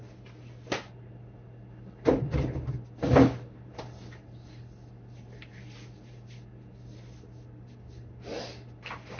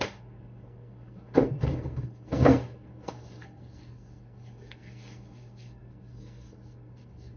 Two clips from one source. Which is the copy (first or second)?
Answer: second